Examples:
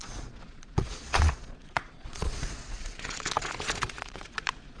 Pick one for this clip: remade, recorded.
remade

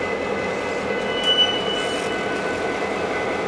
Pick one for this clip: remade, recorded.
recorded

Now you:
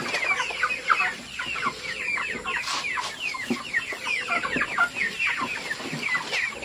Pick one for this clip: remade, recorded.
recorded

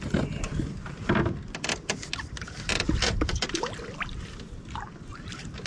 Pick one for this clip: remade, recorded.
recorded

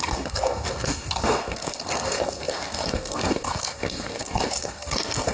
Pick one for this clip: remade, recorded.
remade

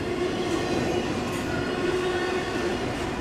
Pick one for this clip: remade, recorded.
recorded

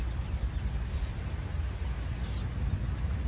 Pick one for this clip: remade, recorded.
recorded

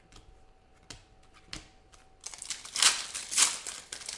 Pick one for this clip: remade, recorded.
recorded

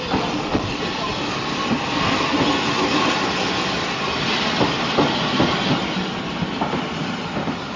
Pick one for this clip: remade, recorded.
recorded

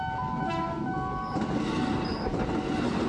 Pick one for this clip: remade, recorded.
recorded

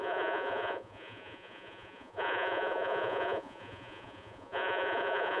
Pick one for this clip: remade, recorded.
remade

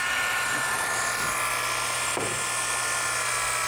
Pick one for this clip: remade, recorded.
recorded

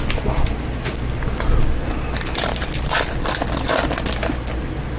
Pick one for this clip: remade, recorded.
recorded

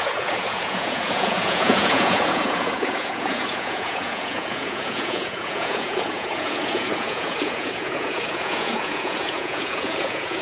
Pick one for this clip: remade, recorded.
remade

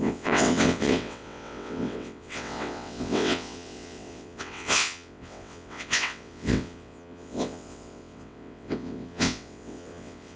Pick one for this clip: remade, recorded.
remade